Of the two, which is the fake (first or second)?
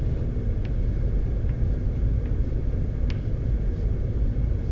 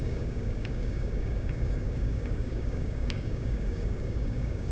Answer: second